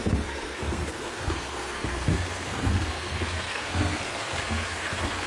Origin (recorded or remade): remade